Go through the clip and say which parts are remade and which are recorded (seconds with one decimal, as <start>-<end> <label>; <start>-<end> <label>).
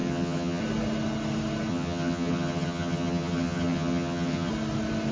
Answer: 0.0-0.6 remade; 0.6-1.7 recorded; 1.7-4.5 remade; 4.5-5.1 recorded